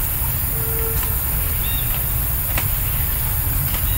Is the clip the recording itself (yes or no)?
yes